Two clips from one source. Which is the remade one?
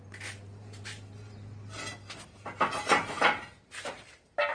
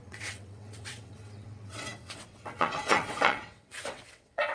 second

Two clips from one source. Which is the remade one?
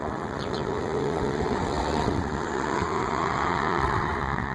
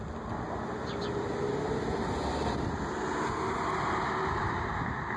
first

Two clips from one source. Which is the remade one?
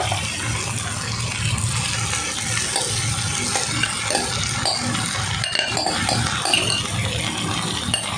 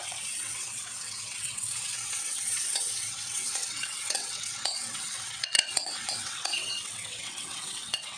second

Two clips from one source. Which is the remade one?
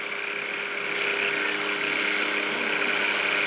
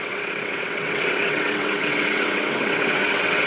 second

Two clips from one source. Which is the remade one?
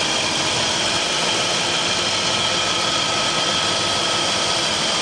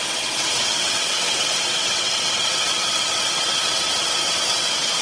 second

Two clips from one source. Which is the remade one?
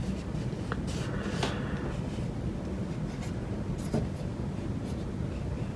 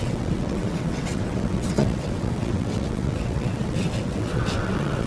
second